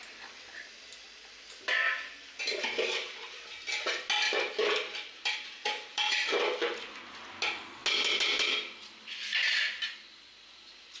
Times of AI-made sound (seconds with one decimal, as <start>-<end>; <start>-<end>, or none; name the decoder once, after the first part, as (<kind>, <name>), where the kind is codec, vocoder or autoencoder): 4.2-6.4 (vocoder, BigVGAN v2)